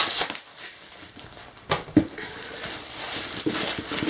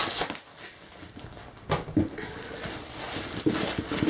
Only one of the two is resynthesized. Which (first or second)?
first